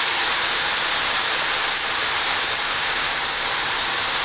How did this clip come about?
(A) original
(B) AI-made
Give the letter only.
B